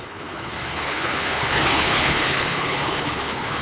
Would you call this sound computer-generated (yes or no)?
yes